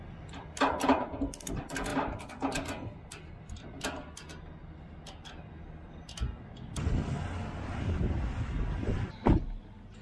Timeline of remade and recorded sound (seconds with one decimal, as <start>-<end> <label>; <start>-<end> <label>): 0.0-10.0 recorded